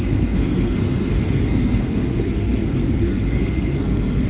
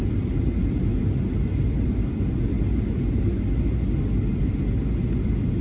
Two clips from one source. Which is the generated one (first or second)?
first